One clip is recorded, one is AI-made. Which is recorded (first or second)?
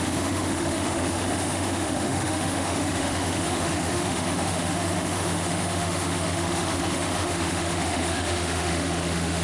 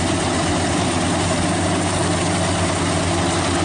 second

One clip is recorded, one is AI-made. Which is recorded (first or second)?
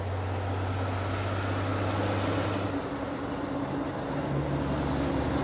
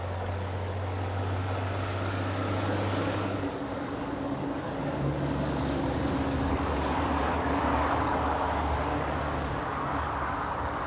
first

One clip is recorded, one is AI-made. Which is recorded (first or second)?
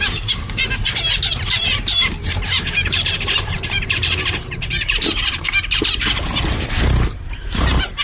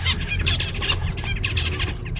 second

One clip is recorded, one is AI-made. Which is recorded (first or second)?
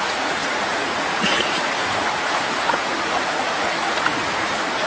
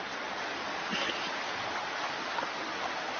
second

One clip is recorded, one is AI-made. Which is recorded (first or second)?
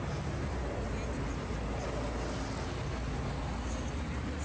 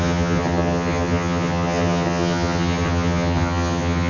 first